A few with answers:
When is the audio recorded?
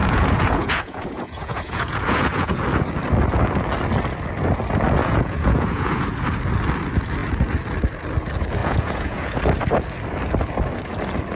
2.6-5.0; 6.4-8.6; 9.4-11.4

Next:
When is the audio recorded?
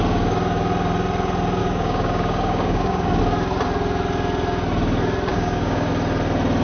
0.0-1.6; 3.2-5.3; 5.9-6.6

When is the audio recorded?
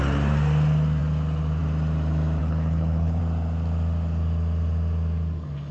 0.0-2.4; 3.2-5.7